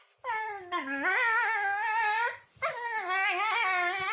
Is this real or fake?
real